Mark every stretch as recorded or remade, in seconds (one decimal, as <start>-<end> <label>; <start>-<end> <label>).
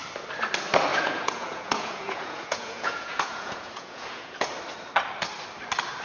0.0-0.9 recorded; 0.9-4.5 remade; 4.5-6.0 recorded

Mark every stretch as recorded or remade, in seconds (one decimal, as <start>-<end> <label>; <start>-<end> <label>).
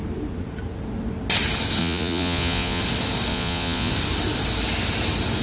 0.0-1.8 recorded; 1.8-2.8 remade; 2.8-3.3 recorded; 3.3-3.9 remade; 3.9-5.4 recorded